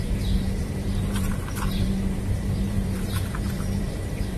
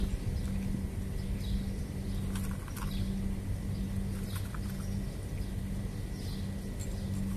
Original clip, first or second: second